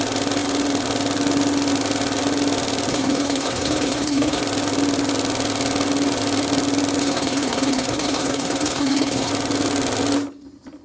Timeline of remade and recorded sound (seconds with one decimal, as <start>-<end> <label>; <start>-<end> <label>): 0.0-2.9 recorded; 2.9-4.4 remade; 4.4-7.0 recorded; 7.0-9.3 remade; 9.3-10.8 recorded